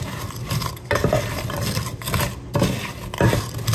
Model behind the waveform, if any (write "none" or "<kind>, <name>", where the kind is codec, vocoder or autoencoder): none